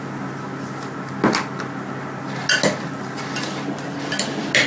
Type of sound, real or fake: real